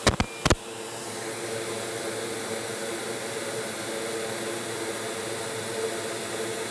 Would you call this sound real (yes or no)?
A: yes